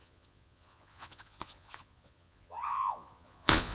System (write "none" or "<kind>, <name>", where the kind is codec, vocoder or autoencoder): vocoder, Vocos